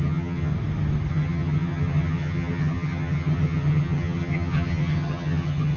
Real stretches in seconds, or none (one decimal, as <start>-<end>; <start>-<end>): 0.5-1.1